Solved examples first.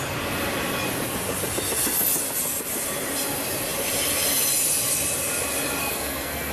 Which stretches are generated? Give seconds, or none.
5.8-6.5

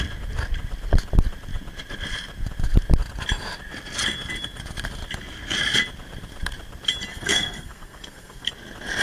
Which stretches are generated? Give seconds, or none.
7.1-8.5

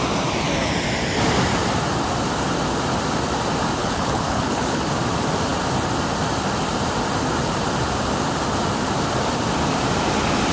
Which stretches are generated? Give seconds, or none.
3.8-4.8

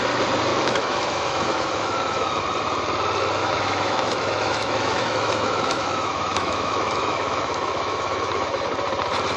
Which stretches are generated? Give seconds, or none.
0.5-2.4; 3.4-8.6

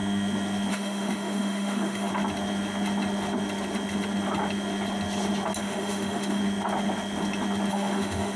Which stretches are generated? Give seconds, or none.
0.7-2.1; 5.6-6.4; 7.7-8.4